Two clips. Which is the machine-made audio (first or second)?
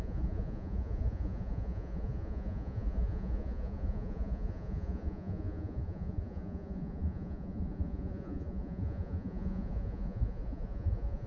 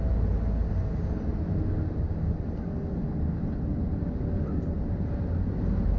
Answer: first